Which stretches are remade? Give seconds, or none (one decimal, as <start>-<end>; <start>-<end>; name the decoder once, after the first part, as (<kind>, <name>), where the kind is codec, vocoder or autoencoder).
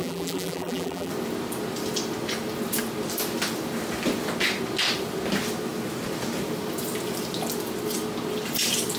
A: 0.0-1.1 (vocoder, BigVGAN v2)